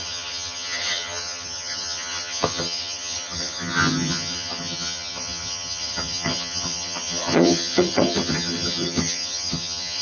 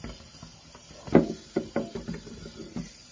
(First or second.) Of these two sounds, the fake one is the first